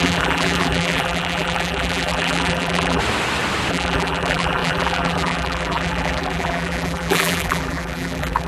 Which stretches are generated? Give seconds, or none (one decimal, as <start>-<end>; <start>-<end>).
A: 0.0-3.0; 3.7-8.5